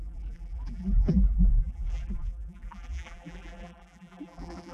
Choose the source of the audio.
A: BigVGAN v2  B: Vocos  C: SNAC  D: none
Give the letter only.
A